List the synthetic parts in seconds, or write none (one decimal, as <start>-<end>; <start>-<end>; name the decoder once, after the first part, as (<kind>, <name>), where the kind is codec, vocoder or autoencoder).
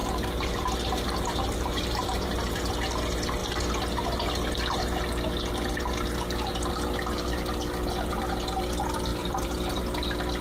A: 0.0-2.7 (vocoder, BigVGAN v2); 9.1-9.8